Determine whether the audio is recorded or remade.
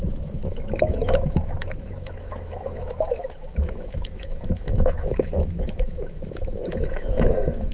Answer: remade